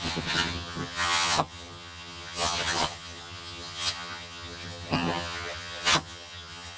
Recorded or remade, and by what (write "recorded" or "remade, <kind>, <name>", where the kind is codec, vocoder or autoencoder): remade, vocoder, HiFi-GAN